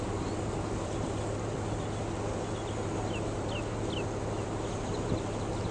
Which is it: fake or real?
real